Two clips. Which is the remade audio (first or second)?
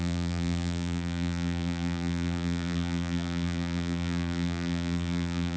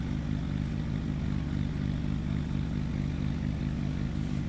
first